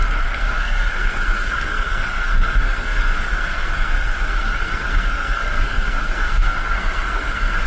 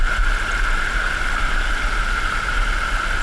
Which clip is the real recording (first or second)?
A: second